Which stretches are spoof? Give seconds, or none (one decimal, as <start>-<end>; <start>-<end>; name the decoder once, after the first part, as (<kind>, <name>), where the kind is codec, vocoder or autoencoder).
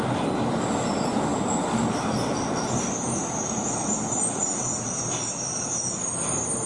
none